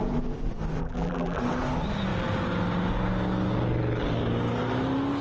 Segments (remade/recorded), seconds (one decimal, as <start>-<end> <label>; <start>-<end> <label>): 0.0-0.8 recorded; 0.8-1.4 remade; 1.4-5.2 recorded